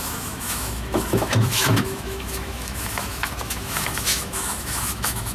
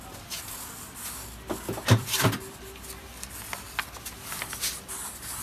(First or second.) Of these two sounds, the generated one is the first